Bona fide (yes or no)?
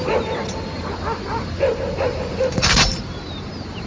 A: yes